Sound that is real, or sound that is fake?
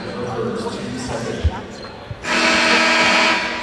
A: real